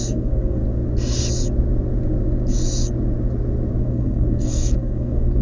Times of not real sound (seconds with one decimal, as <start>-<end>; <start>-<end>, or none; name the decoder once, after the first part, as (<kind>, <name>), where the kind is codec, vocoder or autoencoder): 0.0-0.6 (codec, SNAC); 3.8-5.4